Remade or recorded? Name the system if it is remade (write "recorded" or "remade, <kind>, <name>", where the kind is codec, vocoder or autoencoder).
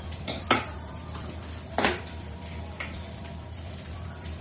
remade, vocoder, BigVGAN v2